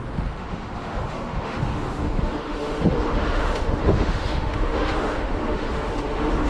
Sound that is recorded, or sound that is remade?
remade